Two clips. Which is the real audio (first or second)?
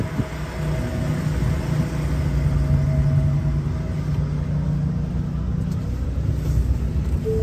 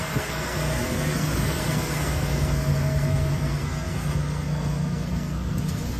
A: first